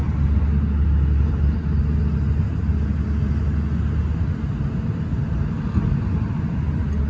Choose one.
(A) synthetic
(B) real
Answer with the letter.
B